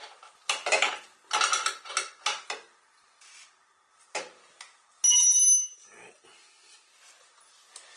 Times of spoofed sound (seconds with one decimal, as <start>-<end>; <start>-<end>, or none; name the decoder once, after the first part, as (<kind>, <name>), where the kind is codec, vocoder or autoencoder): none